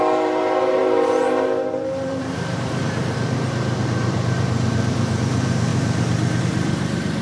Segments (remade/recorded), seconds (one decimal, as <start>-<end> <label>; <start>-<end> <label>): 0.0-7.2 remade